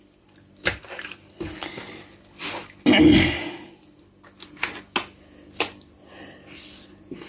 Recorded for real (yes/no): yes